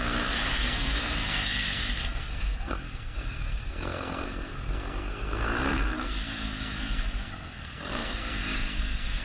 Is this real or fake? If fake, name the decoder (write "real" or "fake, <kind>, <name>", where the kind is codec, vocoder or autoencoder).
fake, codec, SNAC